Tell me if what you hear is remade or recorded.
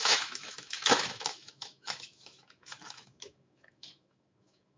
remade